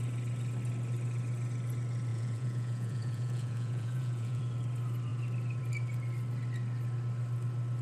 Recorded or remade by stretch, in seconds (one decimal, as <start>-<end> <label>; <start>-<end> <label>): 0.0-2.1 recorded; 2.1-4.4 remade; 4.4-7.8 recorded